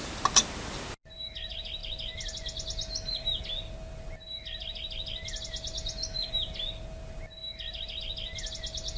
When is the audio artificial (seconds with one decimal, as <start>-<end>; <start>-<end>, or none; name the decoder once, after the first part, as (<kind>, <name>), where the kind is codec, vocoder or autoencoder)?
none